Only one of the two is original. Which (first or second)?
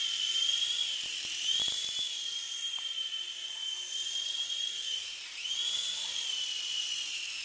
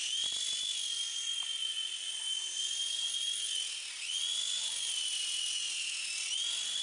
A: second